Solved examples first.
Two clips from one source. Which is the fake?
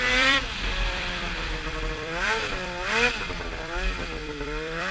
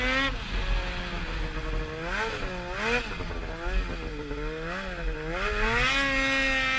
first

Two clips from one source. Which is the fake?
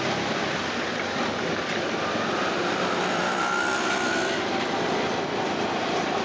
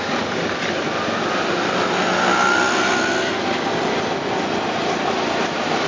first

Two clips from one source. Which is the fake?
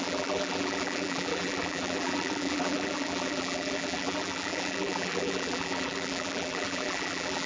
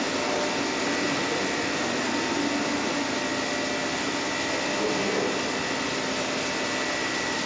first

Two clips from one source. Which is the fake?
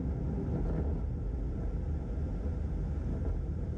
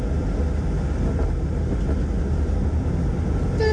first